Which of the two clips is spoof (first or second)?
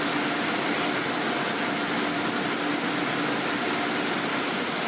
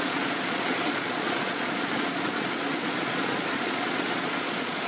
second